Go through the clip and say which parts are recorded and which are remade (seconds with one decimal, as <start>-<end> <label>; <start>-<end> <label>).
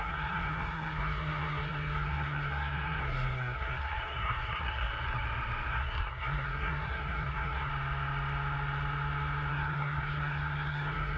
0.0-4.9 remade; 4.9-5.7 recorded; 5.7-7.7 remade; 7.7-9.5 recorded; 9.5-11.2 remade